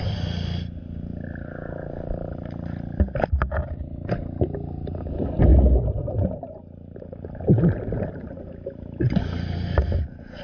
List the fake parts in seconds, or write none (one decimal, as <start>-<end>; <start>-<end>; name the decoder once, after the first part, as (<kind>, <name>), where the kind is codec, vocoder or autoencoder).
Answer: none